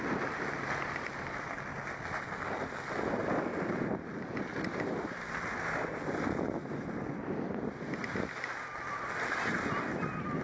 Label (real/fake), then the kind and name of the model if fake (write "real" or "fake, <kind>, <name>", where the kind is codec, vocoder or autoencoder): real